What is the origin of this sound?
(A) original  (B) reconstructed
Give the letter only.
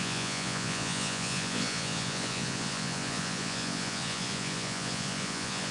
B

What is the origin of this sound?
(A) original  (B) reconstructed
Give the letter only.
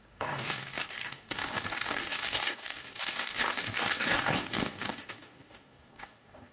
B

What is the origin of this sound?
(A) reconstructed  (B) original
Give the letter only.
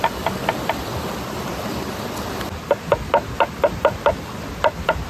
B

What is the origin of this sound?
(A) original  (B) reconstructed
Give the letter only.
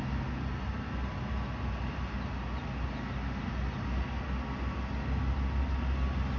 A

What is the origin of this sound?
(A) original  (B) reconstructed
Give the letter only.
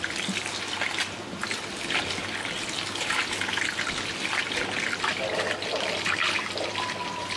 A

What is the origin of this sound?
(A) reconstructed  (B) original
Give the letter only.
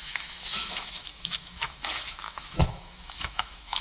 A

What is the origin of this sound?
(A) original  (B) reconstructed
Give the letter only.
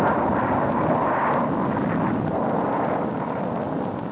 A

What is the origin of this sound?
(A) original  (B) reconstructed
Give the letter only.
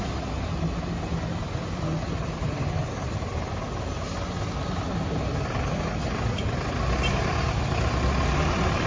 A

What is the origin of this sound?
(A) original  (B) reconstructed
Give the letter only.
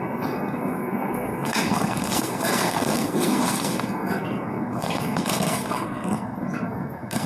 B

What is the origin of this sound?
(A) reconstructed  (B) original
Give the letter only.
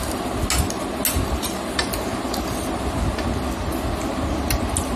B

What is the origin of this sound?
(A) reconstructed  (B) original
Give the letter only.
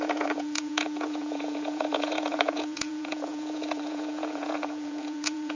A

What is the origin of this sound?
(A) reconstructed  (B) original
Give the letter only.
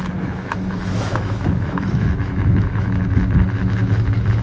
A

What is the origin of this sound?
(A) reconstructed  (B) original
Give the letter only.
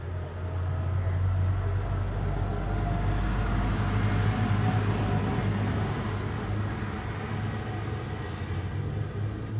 B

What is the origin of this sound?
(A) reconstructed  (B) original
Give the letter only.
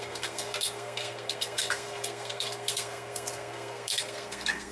A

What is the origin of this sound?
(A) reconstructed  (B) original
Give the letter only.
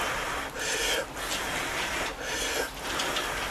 B